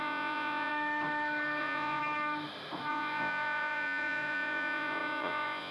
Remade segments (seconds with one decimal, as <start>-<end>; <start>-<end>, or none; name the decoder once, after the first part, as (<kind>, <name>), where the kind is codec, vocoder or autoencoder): 0.0-0.7 (vocoder, Vocos); 1.6-2.0; 2.9-5.7